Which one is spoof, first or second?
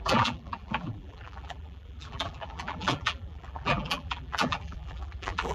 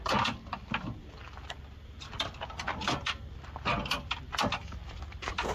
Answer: first